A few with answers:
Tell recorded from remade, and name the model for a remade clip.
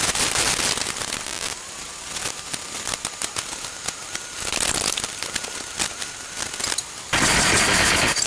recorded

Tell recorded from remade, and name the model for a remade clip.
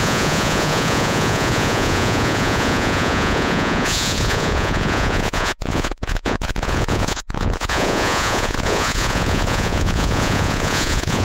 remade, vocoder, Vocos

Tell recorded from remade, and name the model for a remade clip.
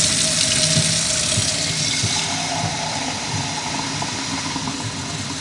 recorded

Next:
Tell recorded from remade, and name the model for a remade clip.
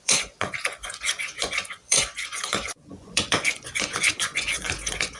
remade, vocoder, Vocos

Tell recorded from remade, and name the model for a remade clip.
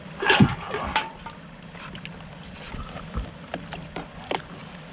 recorded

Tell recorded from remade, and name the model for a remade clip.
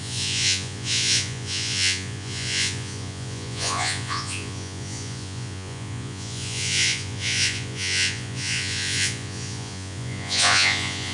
remade, vocoder, Vocos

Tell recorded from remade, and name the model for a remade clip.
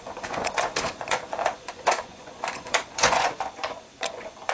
remade, vocoder, Vocos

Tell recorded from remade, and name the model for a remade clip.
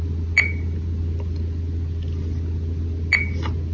recorded